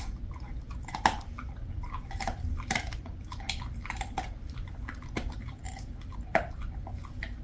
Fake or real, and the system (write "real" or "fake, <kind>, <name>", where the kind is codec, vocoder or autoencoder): fake, vocoder, BigVGAN v2